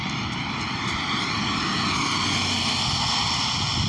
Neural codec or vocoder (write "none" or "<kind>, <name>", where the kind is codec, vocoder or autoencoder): none